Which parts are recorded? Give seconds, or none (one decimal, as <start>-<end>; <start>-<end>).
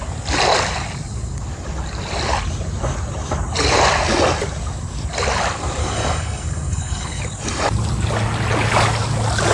0.0-5.8; 7.2-9.5